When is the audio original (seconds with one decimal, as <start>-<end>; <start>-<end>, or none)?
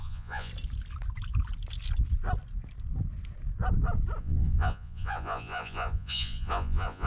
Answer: 0.5-4.2